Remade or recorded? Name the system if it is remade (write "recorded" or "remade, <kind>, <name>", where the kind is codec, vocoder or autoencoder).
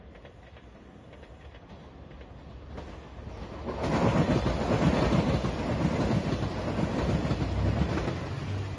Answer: recorded